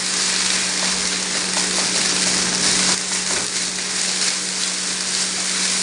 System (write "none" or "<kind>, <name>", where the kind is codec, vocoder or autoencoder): none